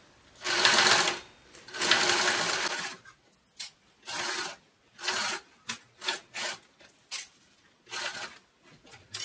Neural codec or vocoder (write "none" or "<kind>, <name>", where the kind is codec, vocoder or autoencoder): none